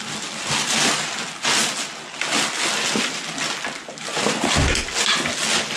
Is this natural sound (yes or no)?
yes